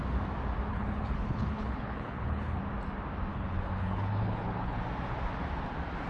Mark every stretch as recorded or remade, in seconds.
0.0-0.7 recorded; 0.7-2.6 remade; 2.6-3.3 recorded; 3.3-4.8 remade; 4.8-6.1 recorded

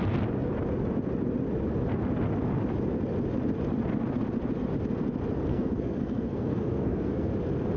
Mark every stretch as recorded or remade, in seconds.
0.0-5.5 recorded; 5.5-7.3 remade; 7.3-7.8 recorded

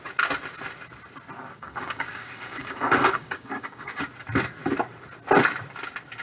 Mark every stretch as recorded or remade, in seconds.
0.0-1.5 recorded; 1.5-4.0 remade; 4.0-6.2 recorded

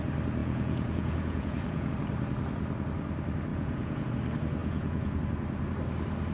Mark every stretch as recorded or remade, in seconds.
0.0-0.4 recorded; 0.4-1.9 remade; 1.9-3.5 recorded; 3.5-4.1 remade; 4.1-4.6 recorded; 4.6-5.2 remade; 5.2-6.3 recorded

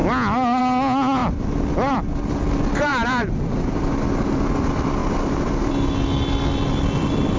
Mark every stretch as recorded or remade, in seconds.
0.0-1.2 recorded; 1.2-2.0 remade; 2.0-5.0 recorded; 5.0-5.6 remade; 5.6-7.4 recorded